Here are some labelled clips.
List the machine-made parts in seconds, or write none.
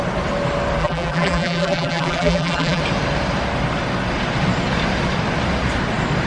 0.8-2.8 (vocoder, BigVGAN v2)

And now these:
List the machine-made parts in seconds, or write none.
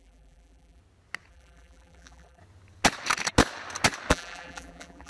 0.0-0.8 (vocoder, BigVGAN v2); 1.3-2.4; 4.1-5.1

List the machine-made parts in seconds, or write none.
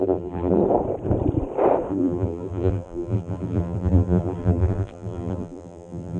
0.0-0.6 (vocoder, BigVGAN v2); 1.9-6.2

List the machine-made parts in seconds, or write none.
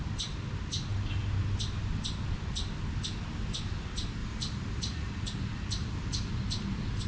4.2-5.1 (vocoder, BigVGAN v2); 5.8-6.3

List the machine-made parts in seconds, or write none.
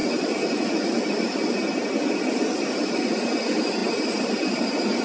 0.0-5.0 (vocoder, BigVGAN v2)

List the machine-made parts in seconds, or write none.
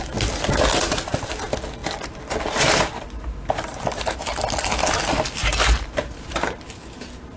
5.4-6.7 (vocoder, BigVGAN v2)